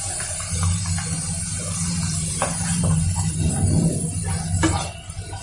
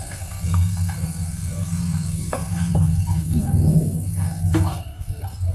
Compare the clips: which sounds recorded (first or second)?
first